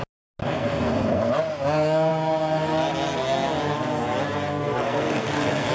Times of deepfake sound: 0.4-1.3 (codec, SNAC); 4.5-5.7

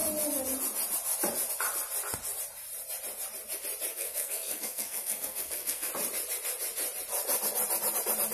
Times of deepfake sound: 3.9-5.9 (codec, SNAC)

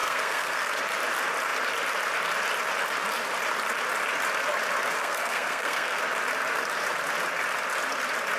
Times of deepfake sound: 0.0-0.7 (codec, SNAC); 5.0-6.0

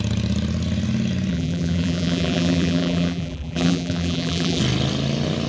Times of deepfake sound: 1.3-4.6 (vocoder, BigVGAN v2)

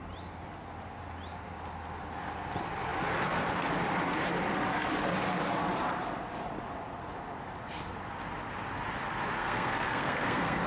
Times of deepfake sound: 9.4-10.7 (codec, SNAC)

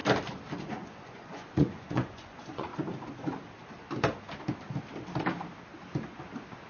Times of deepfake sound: 0.6-2.7 (vocoder, Vocos)